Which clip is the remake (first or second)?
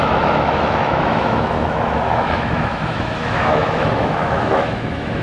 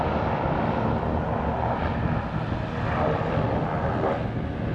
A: first